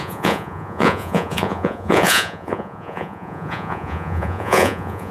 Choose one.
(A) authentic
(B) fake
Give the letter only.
B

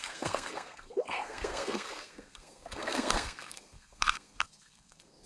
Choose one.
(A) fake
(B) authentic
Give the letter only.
A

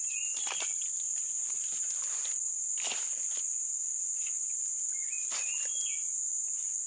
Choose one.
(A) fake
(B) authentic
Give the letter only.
B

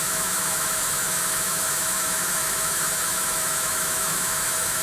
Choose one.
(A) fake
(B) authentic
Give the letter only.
A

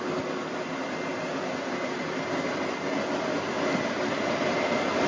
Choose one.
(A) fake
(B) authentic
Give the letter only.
B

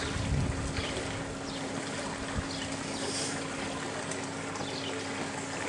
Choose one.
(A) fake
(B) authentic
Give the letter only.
B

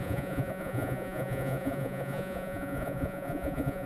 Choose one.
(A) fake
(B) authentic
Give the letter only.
A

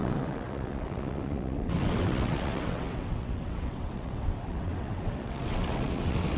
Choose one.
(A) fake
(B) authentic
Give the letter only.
A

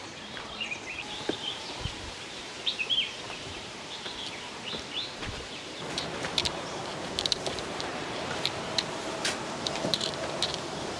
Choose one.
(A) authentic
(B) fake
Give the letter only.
B